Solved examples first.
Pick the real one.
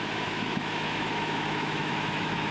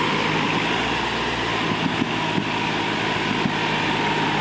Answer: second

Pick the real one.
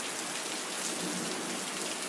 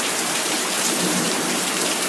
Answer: first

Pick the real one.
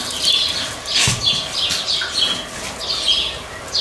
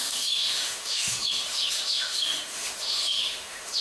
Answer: first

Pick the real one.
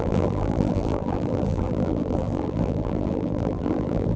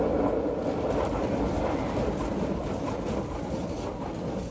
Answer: second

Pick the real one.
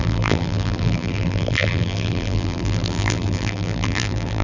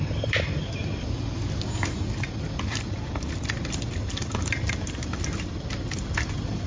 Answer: second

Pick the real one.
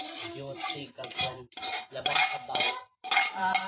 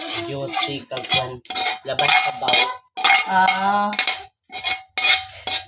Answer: second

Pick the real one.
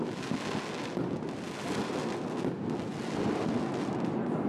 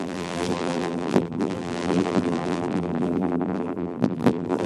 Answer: first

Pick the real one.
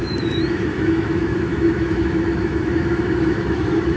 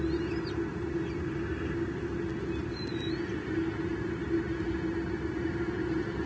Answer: second